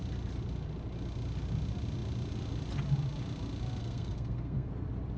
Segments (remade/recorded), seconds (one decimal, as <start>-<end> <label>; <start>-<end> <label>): 0.0-3.8 recorded; 3.8-4.7 remade; 4.7-5.2 recorded